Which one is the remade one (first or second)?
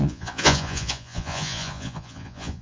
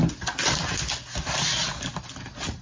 first